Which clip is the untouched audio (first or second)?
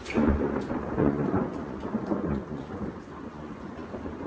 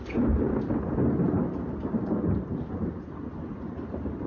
second